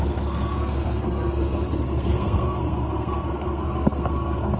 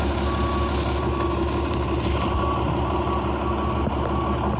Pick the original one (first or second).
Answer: second